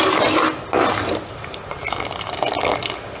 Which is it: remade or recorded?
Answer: recorded